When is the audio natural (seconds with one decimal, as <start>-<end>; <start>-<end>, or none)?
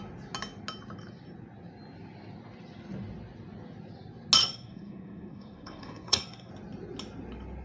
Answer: 0.0-4.4; 6.5-7.6